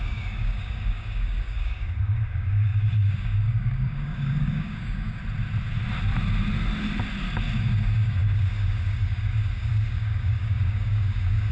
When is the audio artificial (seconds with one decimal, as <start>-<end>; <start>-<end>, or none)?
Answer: 0.0-5.2; 7.6-11.5